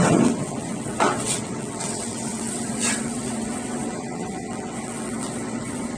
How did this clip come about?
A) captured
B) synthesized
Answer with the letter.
B